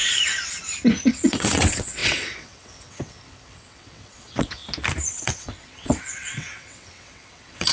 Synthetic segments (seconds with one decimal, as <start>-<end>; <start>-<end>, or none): 1.1-4.6; 5.1-7.7